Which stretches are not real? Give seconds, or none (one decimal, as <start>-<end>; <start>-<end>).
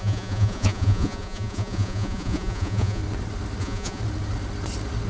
0.0-3.0; 3.6-4.0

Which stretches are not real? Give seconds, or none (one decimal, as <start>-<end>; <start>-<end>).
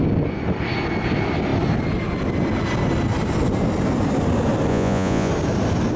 4.7-5.3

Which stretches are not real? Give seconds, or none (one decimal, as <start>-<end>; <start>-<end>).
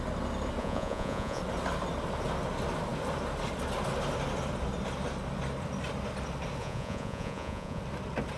0.6-1.4; 6.6-7.8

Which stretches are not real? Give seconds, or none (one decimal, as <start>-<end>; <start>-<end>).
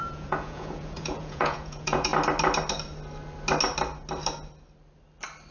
0.0-2.1